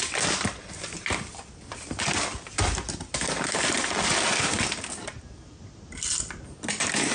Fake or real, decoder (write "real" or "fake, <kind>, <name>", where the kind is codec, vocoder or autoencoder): real